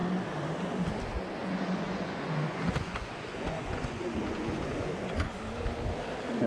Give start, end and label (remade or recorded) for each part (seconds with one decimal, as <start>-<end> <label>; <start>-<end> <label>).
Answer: 0.0-1.4 recorded; 1.4-5.3 remade; 5.3-6.5 recorded